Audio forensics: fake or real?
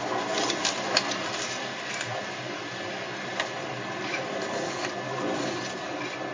fake